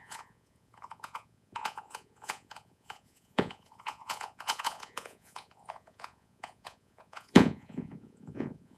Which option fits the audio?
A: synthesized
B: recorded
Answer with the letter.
A